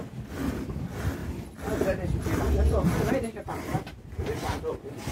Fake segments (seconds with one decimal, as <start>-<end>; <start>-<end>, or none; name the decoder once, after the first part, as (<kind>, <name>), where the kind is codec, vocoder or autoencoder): none

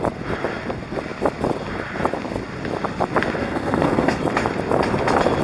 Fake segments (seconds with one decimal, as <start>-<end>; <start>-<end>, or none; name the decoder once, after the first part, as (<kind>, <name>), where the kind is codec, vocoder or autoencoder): 3.4-4.2 (codec, SNAC)